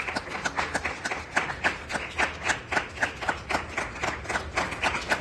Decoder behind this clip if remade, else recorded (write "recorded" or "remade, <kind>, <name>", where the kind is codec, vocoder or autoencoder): recorded